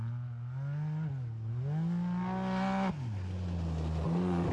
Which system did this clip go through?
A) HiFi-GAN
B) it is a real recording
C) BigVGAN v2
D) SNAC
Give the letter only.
B